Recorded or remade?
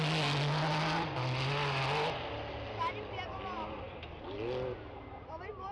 recorded